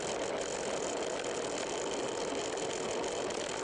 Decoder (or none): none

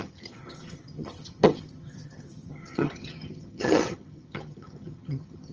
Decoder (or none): vocoder, HiFi-GAN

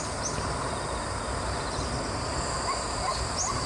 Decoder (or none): none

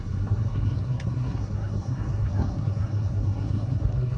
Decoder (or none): codec, SNAC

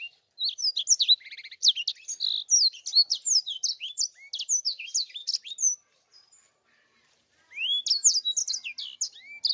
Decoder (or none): none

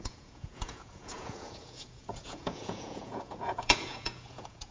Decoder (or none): vocoder, Vocos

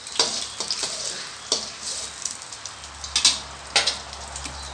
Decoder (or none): none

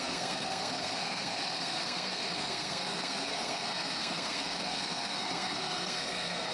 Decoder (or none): codec, SNAC